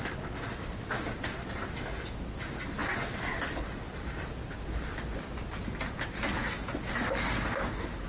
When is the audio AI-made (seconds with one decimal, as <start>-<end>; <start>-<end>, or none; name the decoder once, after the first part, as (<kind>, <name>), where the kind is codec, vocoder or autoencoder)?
none